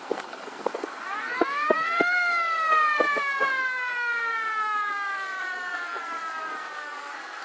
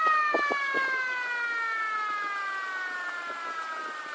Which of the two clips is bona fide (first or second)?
second